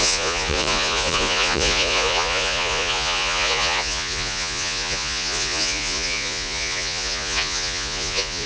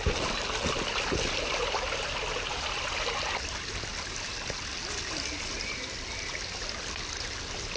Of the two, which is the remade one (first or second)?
first